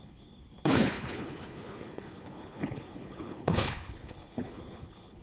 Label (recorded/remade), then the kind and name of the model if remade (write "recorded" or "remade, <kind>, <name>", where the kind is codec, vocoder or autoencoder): remade, codec, HILCodec